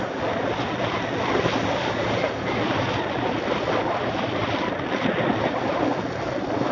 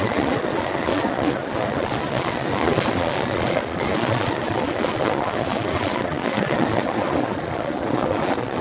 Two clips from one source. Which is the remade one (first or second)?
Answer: second